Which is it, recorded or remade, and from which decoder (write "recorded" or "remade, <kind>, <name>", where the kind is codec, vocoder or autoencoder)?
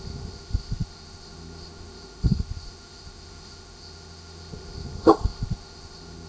remade, autoencoder, DAC-VAE